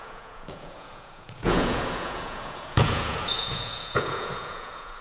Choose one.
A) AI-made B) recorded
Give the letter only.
A